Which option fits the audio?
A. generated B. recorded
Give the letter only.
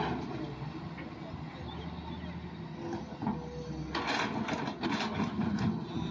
B